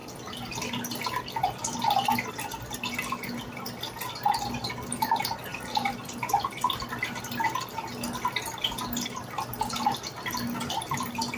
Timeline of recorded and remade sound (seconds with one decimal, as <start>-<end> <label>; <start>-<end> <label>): 0.0-1.1 recorded; 1.1-5.5 remade; 5.5-6.9 recorded; 6.9-11.4 remade